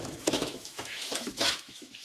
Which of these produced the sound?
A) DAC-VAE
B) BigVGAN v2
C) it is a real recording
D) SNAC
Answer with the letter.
A